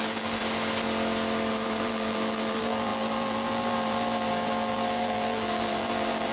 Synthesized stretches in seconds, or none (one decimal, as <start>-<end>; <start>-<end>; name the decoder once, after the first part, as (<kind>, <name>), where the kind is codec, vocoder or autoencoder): 0.0-0.4 (vocoder, BigVGAN v2); 1.5-6.3

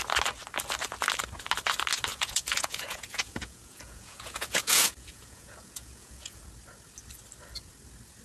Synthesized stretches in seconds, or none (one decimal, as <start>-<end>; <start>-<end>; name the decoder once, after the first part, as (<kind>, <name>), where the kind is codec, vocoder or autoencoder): 2.1-6.4 (vocoder, Vocos)

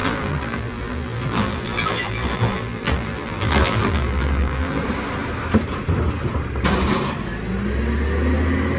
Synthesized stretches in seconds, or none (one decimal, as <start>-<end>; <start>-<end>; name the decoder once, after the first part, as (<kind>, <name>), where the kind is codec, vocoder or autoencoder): 0.0-4.8 (vocoder, BigVGAN v2)